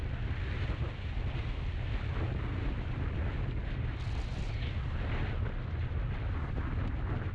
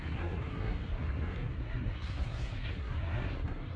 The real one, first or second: first